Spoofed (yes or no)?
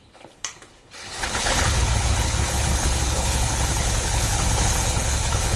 yes